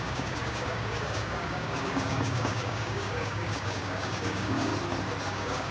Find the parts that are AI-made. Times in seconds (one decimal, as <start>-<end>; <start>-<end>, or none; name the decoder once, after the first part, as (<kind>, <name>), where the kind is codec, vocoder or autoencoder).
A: 0.0-4.7 (codec, DAC); 5.3-5.7